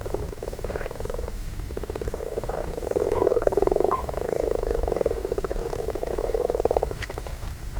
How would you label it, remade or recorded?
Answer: remade